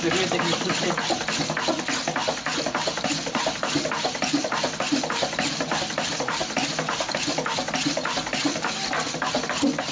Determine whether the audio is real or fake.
real